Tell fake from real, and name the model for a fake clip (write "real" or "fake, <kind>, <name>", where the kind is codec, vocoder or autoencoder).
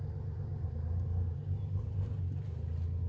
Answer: real